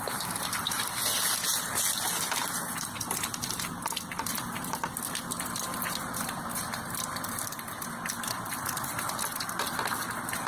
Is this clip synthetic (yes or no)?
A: no